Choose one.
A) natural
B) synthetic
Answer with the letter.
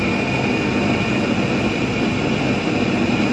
A